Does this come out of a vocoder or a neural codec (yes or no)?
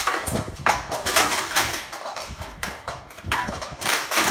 yes